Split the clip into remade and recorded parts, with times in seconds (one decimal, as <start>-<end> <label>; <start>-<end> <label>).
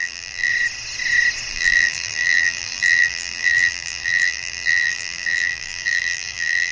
0.0-0.5 remade; 0.5-1.5 recorded; 1.5-6.7 remade